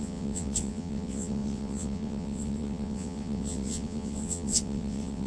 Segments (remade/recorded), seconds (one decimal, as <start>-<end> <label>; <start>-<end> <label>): 0.0-5.3 remade

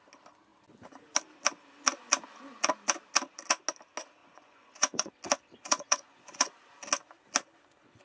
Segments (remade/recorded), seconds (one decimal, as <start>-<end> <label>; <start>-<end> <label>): 0.0-4.2 recorded; 4.2-5.1 remade; 5.1-5.6 recorded; 5.6-6.5 remade; 6.5-8.0 recorded

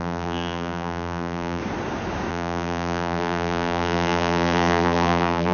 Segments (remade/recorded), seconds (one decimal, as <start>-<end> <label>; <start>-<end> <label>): 0.0-1.6 remade; 1.6-2.3 recorded; 2.3-5.5 remade

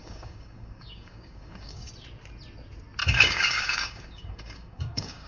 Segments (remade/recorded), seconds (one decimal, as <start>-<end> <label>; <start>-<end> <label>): 0.0-1.9 remade; 1.9-3.0 recorded; 3.0-5.3 remade